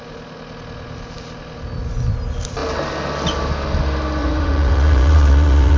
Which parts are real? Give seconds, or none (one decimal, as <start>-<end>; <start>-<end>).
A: 0.0-4.2